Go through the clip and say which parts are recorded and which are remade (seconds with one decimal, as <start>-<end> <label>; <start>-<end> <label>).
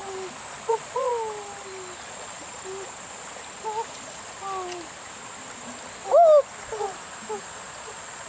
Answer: 0.0-0.5 recorded; 0.5-1.1 remade; 1.1-2.0 recorded; 2.0-2.4 remade; 2.4-7.4 recorded; 7.4-8.3 remade